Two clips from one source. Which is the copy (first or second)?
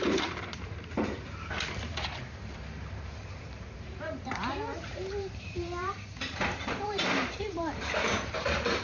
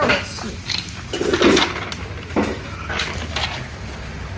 first